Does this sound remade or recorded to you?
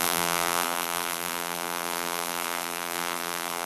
remade